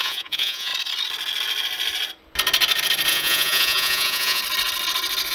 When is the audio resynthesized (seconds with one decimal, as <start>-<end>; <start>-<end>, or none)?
0.0-0.7; 3.1-4.4